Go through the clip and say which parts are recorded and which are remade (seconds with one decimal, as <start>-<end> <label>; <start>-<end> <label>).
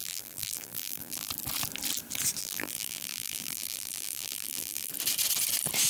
0.0-1.3 remade; 1.3-2.4 recorded; 2.4-4.9 remade; 4.9-5.9 recorded